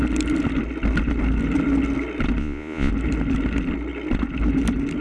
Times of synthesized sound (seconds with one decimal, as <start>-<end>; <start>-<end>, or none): 2.4-2.9